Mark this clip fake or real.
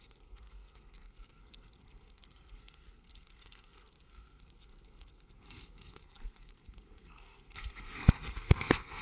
fake